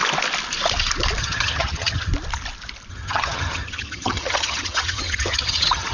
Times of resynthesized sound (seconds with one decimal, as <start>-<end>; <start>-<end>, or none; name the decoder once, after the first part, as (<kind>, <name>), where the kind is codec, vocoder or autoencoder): 1.2-2.1 (vocoder, HiFi-GAN); 2.9-5.9